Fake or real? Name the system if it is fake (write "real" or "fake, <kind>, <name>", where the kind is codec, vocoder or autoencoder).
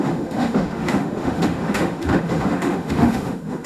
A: fake, autoencoder, DAC-VAE